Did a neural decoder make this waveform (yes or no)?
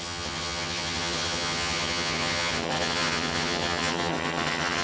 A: yes